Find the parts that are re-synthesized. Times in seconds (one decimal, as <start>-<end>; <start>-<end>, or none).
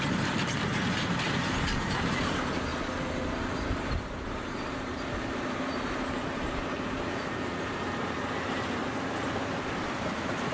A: 0.0-2.7; 3.4-8.8; 9.7-10.5